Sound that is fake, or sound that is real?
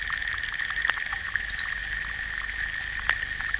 real